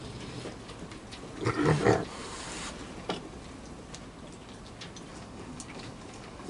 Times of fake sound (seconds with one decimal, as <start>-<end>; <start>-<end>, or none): 5.1-6.5